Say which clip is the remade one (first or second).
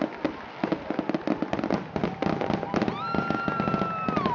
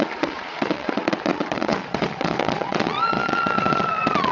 second